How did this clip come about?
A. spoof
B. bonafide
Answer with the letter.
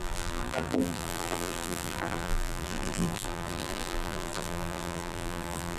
A